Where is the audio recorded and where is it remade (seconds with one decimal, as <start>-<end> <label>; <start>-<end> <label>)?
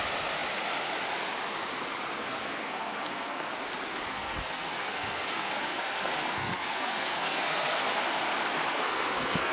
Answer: 0.0-2.2 recorded; 2.2-3.5 remade; 3.5-4.1 recorded; 4.1-8.0 remade; 8.0-8.7 recorded; 8.7-9.5 remade